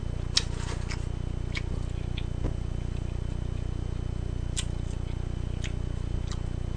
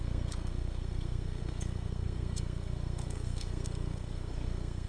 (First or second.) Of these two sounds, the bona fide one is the first